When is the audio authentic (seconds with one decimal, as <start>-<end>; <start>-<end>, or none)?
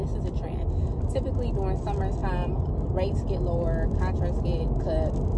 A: 0.0-5.4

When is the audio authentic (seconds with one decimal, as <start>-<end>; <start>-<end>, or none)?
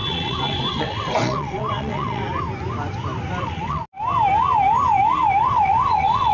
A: 2.2-3.4; 3.8-5.4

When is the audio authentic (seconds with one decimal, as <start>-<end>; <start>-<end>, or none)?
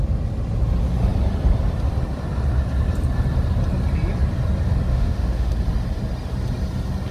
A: 0.0-4.9; 5.5-7.1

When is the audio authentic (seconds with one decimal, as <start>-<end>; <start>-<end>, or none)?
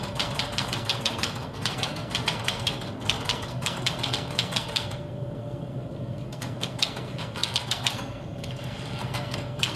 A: none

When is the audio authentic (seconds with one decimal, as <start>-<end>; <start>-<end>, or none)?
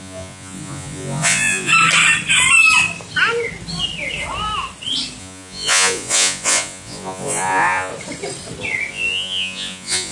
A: 1.7-5.2; 7.9-8.9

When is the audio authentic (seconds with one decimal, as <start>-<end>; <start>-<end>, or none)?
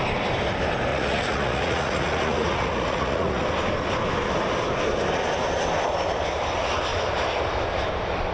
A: 0.0-0.9; 3.4-8.3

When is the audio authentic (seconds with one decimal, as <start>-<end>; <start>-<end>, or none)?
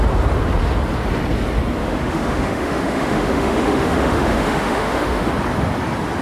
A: 0.0-1.8; 5.3-6.2